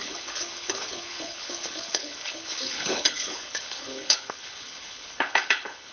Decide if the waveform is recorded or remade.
remade